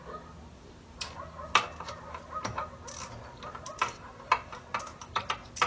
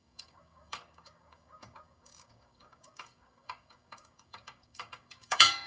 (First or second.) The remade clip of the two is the second